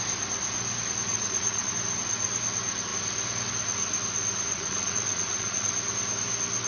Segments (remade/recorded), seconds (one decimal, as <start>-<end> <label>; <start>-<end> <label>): 0.0-1.1 recorded; 1.1-1.7 remade; 1.7-4.5 recorded; 4.5-5.7 remade; 5.7-6.7 recorded